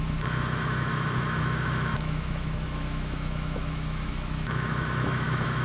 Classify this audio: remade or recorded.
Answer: remade